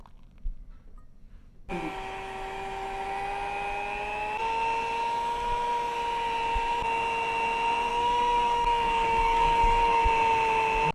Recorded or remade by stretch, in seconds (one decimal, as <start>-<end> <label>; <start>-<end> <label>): 0.0-7.9 recorded; 7.9-10.0 remade; 10.0-10.9 recorded